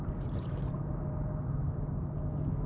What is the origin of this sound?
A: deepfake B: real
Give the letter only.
B